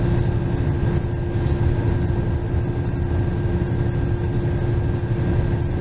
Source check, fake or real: real